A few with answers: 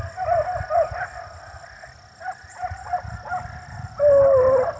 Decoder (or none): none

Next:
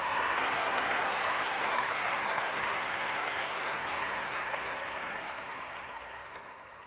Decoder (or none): codec, SNAC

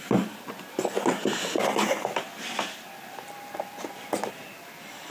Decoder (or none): none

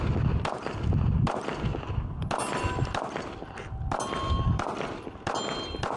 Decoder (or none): none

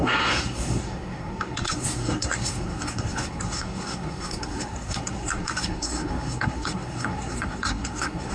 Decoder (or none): codec, SNAC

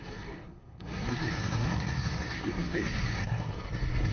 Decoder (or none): codec, SNAC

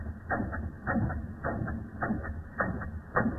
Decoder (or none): none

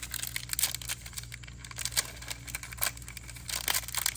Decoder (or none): none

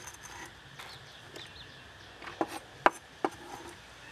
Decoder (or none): none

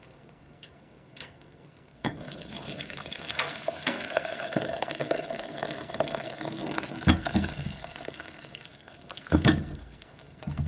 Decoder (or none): codec, SNAC